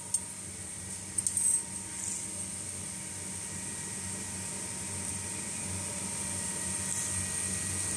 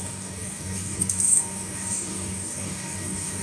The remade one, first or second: second